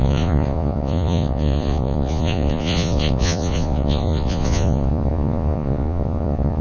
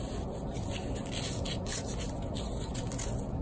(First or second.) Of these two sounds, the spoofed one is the first